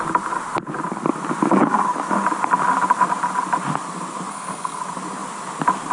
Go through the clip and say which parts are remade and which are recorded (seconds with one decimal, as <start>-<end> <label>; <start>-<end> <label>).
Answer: 0.0-4.3 recorded; 4.3-4.8 remade; 4.8-5.9 recorded